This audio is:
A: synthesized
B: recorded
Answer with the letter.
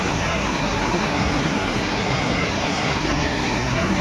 A